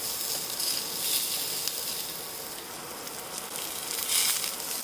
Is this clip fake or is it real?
real